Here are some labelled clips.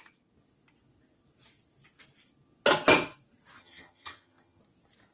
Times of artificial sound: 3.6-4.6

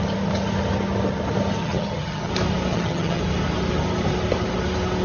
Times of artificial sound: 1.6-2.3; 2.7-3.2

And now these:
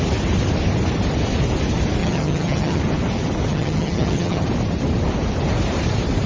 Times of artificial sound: 2.0-2.8; 3.5-4.4

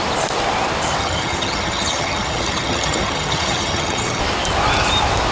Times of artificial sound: 1.0-4.2

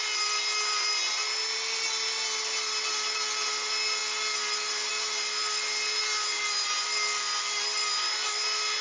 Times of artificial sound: none

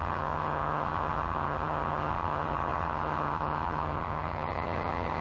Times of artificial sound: 0.0-5.2